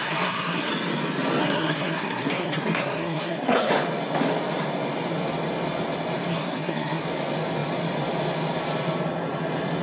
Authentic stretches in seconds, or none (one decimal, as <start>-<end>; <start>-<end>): 0.7-1.4; 3.7-6.3; 7.0-9.8